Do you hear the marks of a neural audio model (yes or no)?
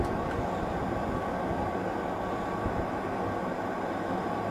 no